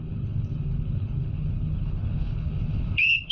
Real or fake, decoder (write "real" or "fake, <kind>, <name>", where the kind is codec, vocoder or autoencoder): fake, codec, HILCodec